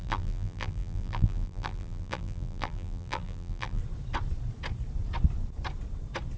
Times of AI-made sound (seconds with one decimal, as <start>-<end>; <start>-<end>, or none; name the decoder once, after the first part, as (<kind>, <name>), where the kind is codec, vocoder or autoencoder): 0.0-3.8 (vocoder, BigVGAN v2)

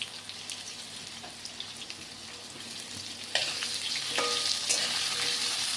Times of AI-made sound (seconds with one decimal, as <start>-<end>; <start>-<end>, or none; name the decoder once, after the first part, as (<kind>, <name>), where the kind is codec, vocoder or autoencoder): none

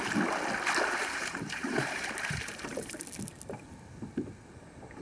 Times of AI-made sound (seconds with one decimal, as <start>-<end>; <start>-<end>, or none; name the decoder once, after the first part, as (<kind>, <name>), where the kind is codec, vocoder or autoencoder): 1.0-3.0 (vocoder, BigVGAN v2)

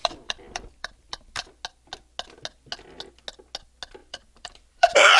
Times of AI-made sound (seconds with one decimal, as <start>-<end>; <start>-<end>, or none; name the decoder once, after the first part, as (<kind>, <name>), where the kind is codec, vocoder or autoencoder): 0.0-1.5 (vocoder, BigVGAN v2); 4.0-5.2

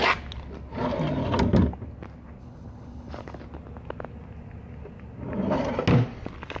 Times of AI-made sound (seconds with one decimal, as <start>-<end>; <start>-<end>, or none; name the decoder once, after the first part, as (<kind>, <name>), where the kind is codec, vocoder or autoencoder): 2.4-3.4 (codec, HILCodec)

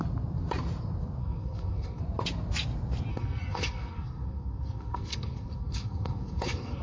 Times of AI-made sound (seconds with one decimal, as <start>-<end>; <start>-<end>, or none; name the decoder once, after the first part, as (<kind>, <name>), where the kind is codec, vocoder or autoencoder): 1.2-2.0 (codec, SNAC); 3.1-6.8